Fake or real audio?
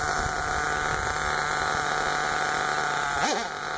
real